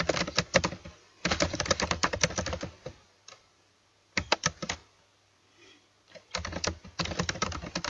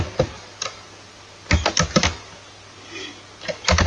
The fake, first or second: first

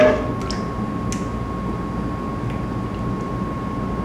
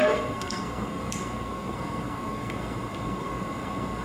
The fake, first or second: second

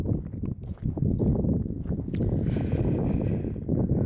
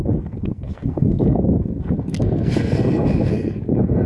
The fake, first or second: second